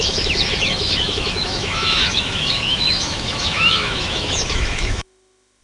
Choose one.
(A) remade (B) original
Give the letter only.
A